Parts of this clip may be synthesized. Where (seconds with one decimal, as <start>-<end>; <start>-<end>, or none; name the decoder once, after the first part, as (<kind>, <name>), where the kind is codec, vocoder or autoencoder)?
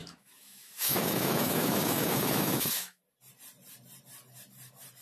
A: 0.0-3.0 (autoencoder, DAC-VAE)